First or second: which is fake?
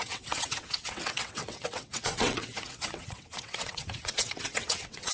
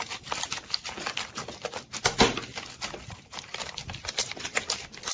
first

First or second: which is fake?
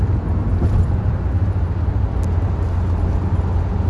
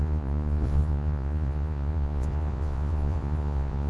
second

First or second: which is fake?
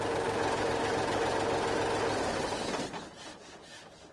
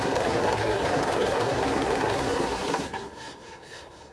second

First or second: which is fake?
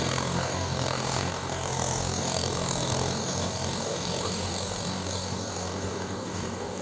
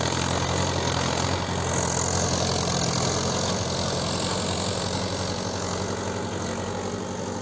first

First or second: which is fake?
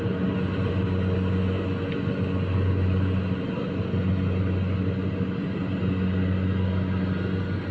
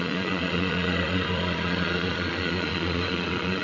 second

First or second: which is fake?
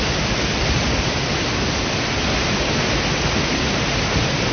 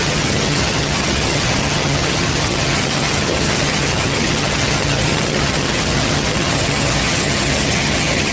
second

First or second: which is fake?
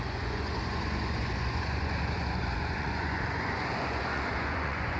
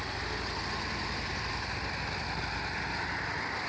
first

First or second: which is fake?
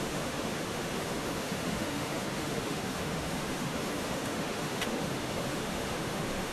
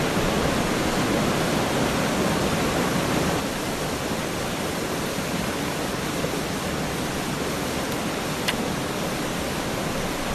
first